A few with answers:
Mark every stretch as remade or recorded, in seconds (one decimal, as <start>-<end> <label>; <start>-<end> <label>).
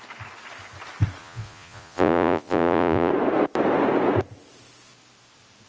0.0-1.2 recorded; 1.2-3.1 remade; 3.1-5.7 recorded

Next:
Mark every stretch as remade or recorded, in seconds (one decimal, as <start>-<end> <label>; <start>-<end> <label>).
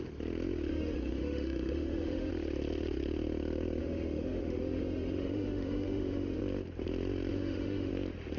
0.0-0.7 recorded; 0.7-2.3 remade; 2.3-3.8 recorded; 3.8-6.4 remade; 6.4-7.3 recorded; 7.3-7.9 remade; 7.9-8.4 recorded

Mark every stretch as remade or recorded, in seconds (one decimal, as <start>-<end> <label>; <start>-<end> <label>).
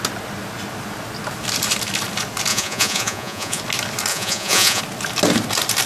0.0-2.5 recorded; 2.5-3.6 remade; 3.6-4.1 recorded; 4.1-4.8 remade; 4.8-5.9 recorded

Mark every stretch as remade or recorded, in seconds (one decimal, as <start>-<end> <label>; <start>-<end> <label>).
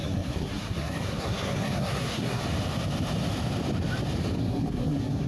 0.0-2.4 remade; 2.4-4.4 recorded; 4.4-5.3 remade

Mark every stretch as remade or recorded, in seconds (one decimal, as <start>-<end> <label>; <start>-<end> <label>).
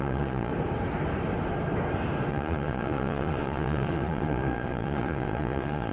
0.0-0.5 remade; 0.5-2.3 recorded; 2.3-5.9 remade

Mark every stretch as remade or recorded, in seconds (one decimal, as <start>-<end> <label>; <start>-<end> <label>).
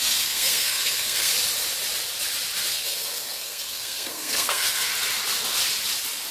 0.0-1.3 remade; 1.3-2.7 recorded; 2.7-4.9 remade; 4.9-6.3 recorded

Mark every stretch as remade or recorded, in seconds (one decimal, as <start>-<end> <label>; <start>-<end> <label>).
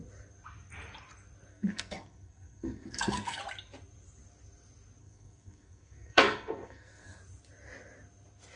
0.0-1.5 recorded; 1.5-3.4 remade; 3.4-5.0 recorded; 5.0-7.2 remade; 7.2-8.6 recorded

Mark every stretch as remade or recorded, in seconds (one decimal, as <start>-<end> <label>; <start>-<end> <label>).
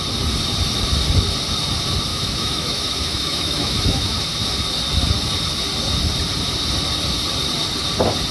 0.0-2.1 recorded; 2.1-4.2 remade; 4.2-8.3 recorded